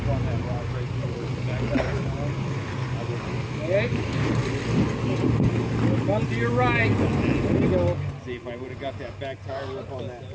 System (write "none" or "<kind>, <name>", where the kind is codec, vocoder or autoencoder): none